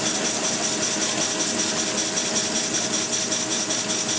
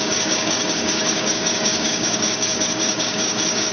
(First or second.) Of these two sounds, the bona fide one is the first